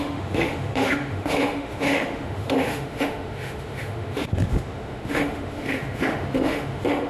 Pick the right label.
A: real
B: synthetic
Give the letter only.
B